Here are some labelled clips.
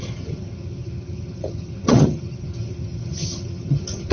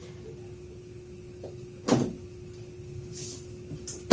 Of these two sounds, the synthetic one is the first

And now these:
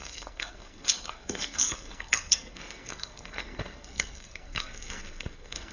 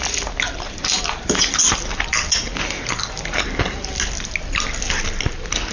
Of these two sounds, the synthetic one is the first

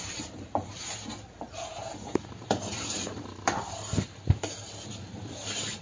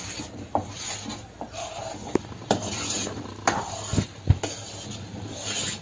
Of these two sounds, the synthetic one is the first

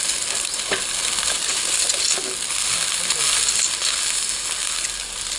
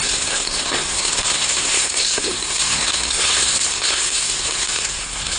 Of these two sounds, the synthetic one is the second